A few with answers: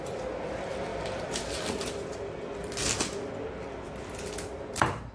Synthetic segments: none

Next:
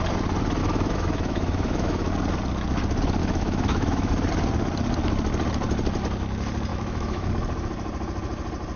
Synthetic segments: 0.6-2.1 (autoencoder, DAC-VAE); 3.2-4.1; 6.7-7.3

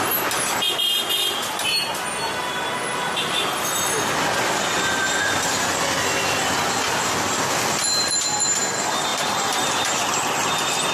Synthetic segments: none

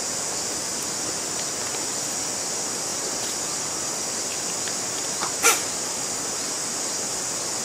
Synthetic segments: none

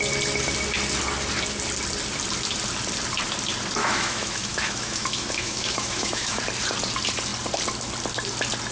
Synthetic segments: 3.8-6.4 (autoencoder, DAC-VAE)

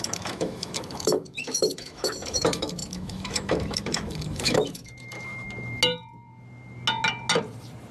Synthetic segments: 0.0-5.3 (autoencoder, DAC-VAE)